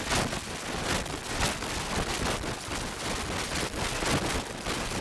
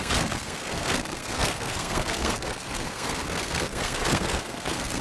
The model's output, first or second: second